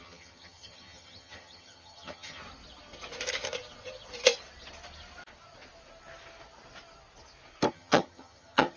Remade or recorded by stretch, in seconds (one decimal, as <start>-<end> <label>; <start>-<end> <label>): 0.0-2.4 remade; 2.4-7.7 recorded; 7.7-8.8 remade